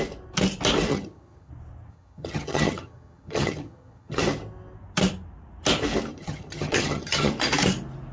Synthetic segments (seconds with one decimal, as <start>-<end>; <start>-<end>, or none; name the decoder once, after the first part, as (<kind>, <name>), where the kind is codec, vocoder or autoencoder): 0.9-1.5 (vocoder, HiFi-GAN); 1.9-4.2; 6.1-7.3